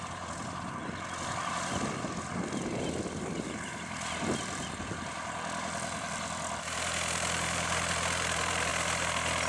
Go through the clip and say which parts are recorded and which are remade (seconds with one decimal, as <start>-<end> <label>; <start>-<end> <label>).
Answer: 0.0-8.7 remade; 8.7-9.5 recorded

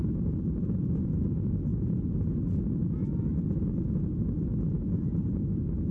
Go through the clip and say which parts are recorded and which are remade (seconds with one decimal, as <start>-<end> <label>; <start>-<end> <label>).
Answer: 0.0-5.9 recorded